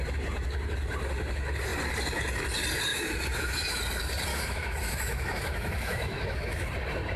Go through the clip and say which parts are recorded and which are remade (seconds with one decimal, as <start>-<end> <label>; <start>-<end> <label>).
0.0-2.9 recorded; 2.9-3.8 remade; 3.8-4.3 recorded; 4.3-6.7 remade; 6.7-7.2 recorded